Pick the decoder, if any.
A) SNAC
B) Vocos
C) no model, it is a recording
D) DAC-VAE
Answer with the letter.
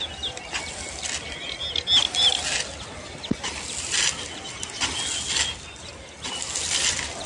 C